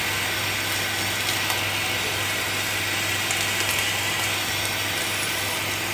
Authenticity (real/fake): real